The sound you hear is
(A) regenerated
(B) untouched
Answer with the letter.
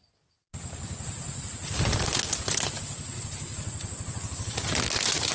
B